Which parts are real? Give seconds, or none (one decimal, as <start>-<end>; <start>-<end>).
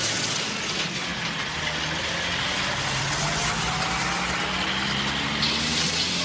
0.0-6.2